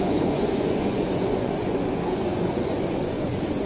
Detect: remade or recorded remade